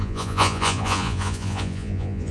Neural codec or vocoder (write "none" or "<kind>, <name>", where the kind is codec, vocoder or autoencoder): vocoder, Vocos